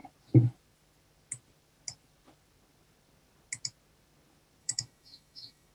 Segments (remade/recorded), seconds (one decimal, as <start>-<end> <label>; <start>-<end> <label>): 0.0-4.6 recorded; 4.6-5.7 remade